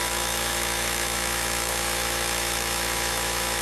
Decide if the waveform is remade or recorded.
remade